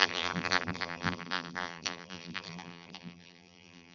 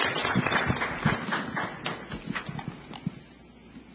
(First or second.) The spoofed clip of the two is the first